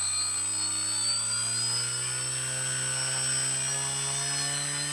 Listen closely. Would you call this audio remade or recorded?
recorded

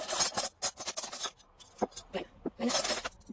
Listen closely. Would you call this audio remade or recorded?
recorded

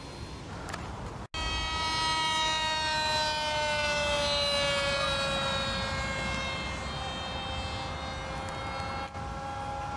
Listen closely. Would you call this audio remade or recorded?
recorded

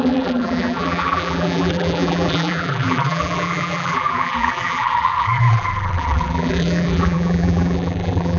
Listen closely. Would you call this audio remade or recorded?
remade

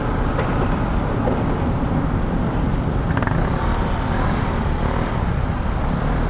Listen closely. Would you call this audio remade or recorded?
remade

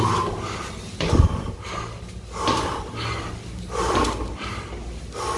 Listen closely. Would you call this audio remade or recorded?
recorded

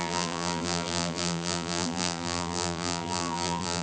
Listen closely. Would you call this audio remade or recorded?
remade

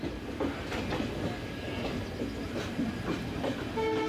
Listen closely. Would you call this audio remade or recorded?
recorded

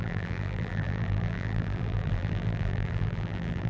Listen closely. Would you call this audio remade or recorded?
remade